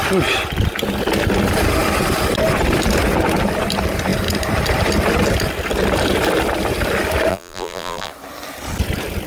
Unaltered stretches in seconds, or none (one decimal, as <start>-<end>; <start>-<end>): 0.0-7.3; 8.1-9.3